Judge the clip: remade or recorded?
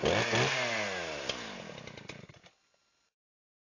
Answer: recorded